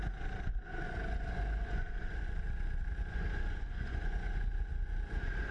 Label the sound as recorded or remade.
remade